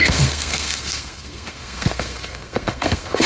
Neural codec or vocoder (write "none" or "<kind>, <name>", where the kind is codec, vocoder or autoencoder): codec, SNAC